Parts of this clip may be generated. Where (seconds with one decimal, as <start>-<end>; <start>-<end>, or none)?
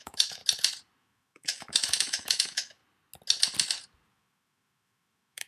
0.0-0.4; 1.0-2.8; 4.1-5.5